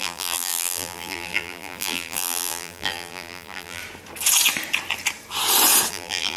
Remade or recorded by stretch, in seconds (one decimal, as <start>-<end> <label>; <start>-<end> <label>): 0.0-3.8 remade; 3.8-5.9 recorded; 5.9-6.4 remade